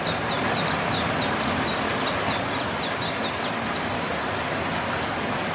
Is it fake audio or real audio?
real